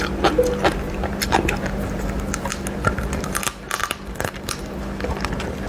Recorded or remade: recorded